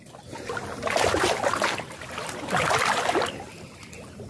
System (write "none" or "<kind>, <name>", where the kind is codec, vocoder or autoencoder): none